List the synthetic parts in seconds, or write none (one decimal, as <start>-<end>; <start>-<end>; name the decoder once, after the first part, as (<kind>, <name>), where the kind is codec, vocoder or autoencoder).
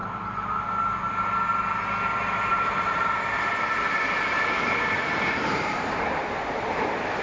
0.0-0.5 (vocoder, BigVGAN v2); 2.5-6.8